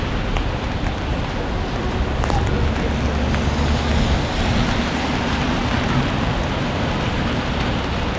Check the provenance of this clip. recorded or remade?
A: recorded